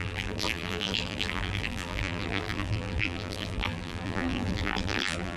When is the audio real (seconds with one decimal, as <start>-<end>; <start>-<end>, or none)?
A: none

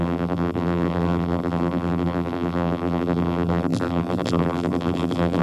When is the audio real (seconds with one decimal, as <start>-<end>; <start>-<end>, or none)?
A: none